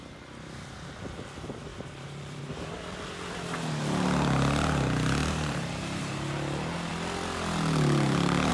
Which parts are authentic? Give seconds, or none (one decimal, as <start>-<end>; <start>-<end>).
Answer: 0.0-1.7; 2.4-5.2; 6.1-8.5